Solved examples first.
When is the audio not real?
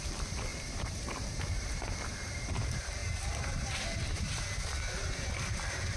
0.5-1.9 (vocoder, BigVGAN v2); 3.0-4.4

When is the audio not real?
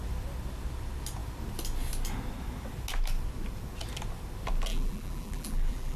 4.7-6.0 (vocoder, BigVGAN v2)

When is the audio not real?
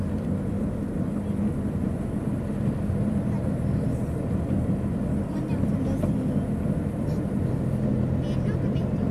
4.9-7.9 (vocoder, BigVGAN v2)